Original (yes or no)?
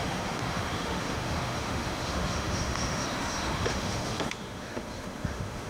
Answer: no